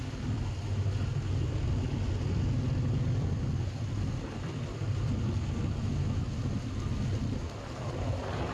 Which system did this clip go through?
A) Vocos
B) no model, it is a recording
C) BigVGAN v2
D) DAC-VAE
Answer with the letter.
B